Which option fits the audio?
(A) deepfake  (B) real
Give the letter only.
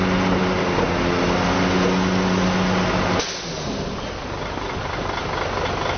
B